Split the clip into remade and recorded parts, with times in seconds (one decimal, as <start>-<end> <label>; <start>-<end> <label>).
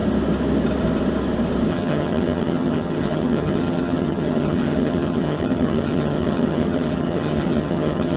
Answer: 0.0-1.7 recorded; 1.7-8.2 remade